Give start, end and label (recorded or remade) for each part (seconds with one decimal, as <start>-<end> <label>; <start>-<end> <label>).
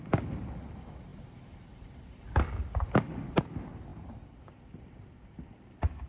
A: 0.0-1.1 recorded; 1.1-2.9 remade; 2.9-3.9 recorded; 3.9-6.1 remade